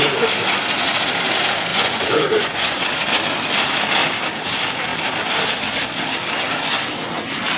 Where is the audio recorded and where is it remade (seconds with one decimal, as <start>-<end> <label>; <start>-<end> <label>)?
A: 0.0-1.7 recorded; 1.7-2.9 remade; 2.9-7.6 recorded